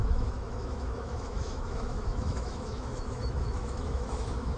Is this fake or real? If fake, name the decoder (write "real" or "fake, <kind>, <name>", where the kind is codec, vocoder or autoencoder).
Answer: fake, autoencoder, DAC-VAE